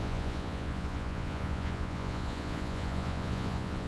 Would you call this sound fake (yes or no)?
yes